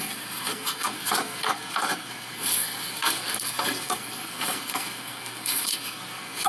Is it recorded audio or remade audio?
remade